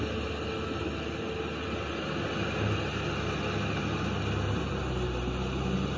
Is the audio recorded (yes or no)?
yes